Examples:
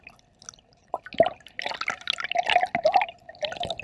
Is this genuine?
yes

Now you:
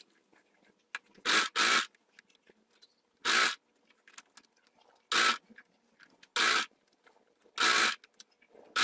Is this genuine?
yes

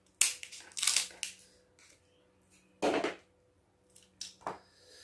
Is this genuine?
yes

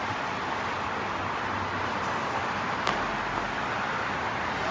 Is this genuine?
yes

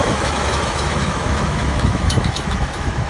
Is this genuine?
no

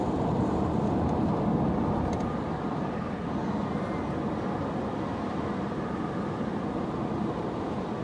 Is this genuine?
yes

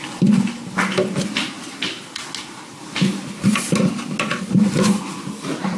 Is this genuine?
yes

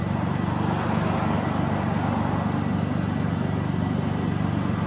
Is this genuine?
yes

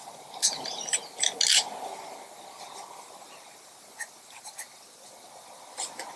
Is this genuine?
yes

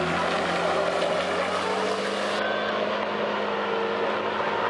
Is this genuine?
yes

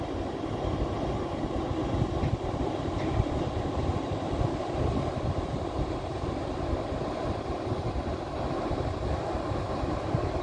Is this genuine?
no